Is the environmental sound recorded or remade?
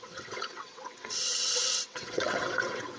remade